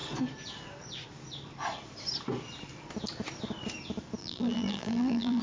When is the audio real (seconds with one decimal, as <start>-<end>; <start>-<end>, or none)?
0.0-4.2